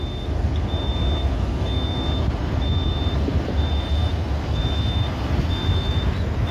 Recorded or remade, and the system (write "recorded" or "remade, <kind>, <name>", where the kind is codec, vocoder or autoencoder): recorded